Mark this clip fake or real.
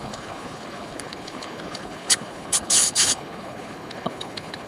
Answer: fake